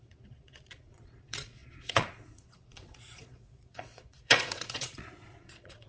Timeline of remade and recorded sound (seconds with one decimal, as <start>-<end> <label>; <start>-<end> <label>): 0.0-5.9 remade